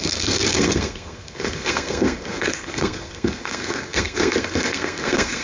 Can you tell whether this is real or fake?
fake